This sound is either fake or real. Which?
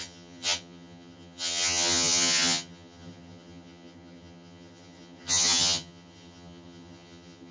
fake